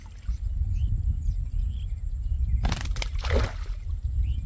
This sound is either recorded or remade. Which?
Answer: recorded